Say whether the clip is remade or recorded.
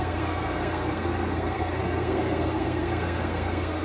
remade